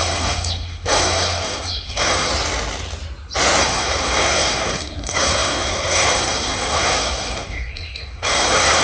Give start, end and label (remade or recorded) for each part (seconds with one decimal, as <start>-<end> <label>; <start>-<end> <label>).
0.0-2.3 remade; 2.3-3.6 recorded; 3.6-8.8 remade